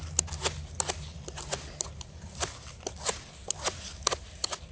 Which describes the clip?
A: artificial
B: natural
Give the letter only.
B